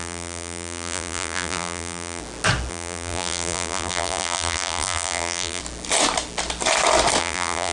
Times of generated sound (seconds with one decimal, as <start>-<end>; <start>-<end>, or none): 0.0-2.2; 2.7-5.6; 7.2-7.7